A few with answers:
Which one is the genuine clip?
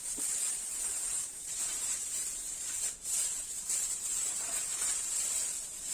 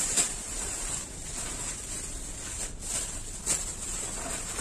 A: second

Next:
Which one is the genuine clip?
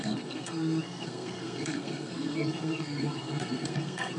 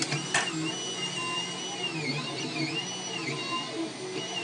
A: second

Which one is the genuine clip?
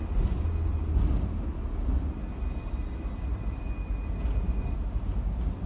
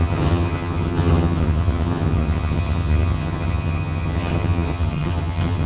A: first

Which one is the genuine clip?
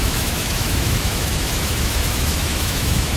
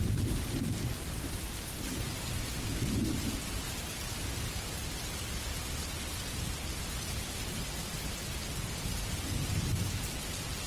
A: second